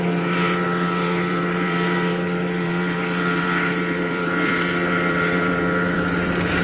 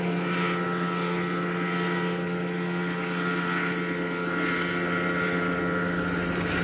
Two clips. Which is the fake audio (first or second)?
first